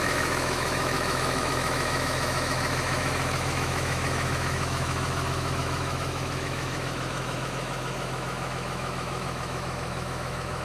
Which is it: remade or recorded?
remade